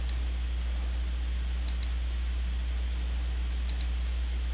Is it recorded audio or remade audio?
recorded